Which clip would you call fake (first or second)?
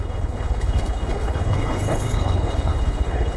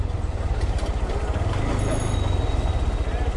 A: first